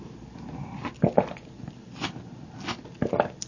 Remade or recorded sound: recorded